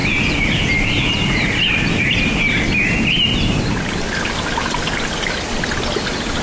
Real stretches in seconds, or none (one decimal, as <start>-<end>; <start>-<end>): 0.0-6.4